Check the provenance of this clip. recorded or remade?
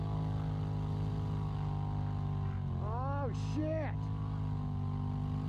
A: recorded